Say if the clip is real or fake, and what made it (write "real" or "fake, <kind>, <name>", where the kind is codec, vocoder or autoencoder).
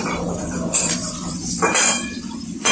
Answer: fake, vocoder, BigVGAN v2